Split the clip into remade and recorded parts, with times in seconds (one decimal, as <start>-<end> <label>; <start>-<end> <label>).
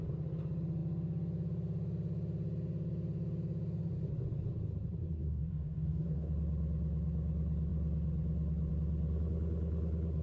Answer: 0.0-5.2 recorded; 5.2-6.3 remade; 6.3-10.2 recorded